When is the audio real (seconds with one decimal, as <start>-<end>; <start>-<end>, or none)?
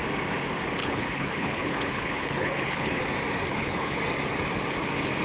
0.0-0.8; 3.0-3.5; 4.0-5.2